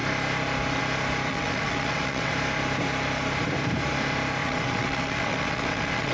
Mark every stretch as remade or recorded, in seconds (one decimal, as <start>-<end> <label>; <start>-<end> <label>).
0.0-1.3 recorded; 1.3-2.3 remade; 2.3-4.4 recorded; 4.4-6.1 remade